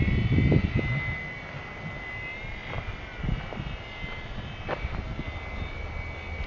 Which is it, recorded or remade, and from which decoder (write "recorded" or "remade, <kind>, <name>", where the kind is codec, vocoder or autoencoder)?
recorded